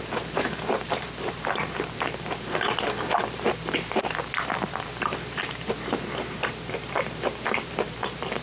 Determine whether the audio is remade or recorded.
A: remade